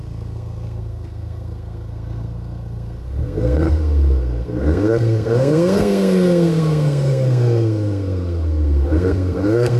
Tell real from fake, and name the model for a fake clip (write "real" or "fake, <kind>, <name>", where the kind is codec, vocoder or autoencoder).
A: fake, codec, SNAC